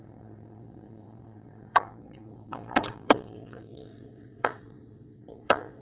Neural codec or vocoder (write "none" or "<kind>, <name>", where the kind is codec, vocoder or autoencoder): vocoder, WaveNeXt